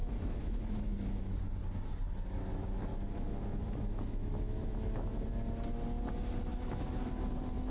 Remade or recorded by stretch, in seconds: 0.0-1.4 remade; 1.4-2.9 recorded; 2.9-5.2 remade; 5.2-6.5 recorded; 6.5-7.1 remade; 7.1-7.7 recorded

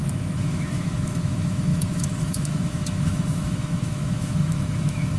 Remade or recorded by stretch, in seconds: 0.0-5.2 remade

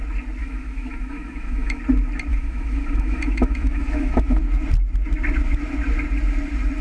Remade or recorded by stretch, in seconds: 0.0-0.4 recorded; 0.4-1.8 remade; 1.8-2.3 recorded; 2.3-4.4 remade; 4.4-6.8 recorded

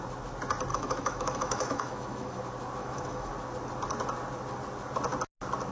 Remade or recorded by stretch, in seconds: 0.0-0.7 recorded; 0.7-2.4 remade; 2.4-2.8 recorded; 2.8-3.3 remade; 3.3-5.7 recorded

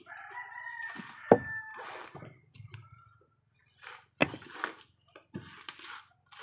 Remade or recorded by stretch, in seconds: 0.0-6.4 recorded

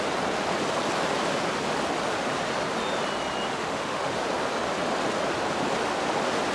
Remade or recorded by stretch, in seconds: 0.0-3.5 recorded; 3.5-4.1 remade; 4.1-6.5 recorded

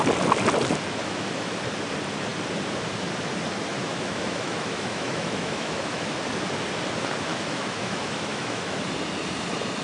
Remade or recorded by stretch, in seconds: 0.0-1.0 recorded; 1.0-1.6 remade; 1.6-3.7 recorded; 3.7-6.2 remade; 6.2-7.3 recorded; 7.3-8.9 remade; 8.9-9.8 recorded